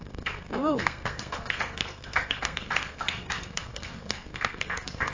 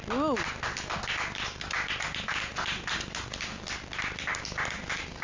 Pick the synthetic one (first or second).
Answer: first